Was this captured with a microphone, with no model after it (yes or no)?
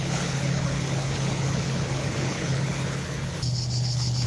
no